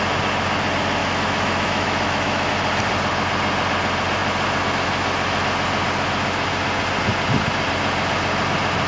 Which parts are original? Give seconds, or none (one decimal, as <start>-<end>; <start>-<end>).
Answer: 0.0-1.0; 2.5-8.9